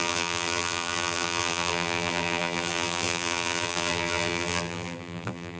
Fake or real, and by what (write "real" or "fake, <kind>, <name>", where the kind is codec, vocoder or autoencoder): fake, vocoder, BigVGAN v2